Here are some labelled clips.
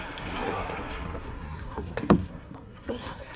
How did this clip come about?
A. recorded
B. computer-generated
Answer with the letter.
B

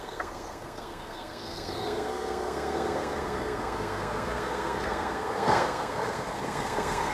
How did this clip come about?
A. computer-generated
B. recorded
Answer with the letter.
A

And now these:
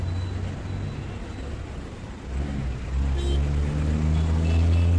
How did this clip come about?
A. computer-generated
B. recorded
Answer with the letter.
B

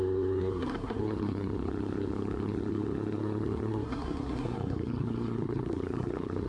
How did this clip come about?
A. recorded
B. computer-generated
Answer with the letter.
B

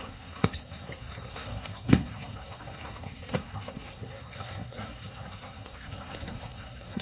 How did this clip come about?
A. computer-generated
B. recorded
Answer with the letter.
A